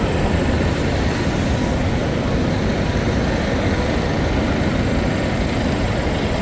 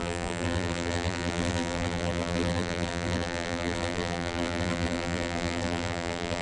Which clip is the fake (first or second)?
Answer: second